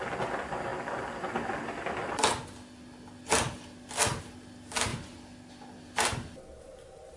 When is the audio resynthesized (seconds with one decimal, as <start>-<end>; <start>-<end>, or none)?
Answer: none